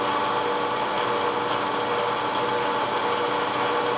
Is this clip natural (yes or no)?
yes